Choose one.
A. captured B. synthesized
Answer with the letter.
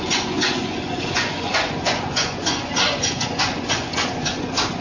B